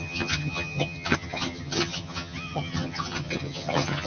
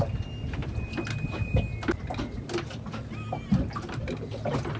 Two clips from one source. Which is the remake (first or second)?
first